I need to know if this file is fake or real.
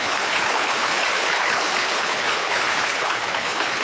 fake